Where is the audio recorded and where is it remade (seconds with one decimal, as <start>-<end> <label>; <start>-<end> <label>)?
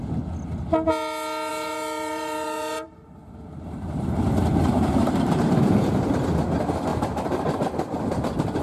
0.0-1.5 recorded; 1.5-5.9 remade; 5.9-6.9 recorded; 6.9-7.6 remade; 7.6-8.6 recorded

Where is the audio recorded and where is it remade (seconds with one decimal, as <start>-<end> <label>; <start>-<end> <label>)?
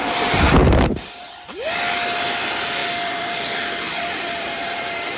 0.0-0.6 recorded; 0.6-1.7 remade; 1.7-2.8 recorded; 2.8-5.2 remade